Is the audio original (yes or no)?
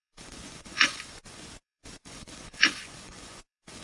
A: no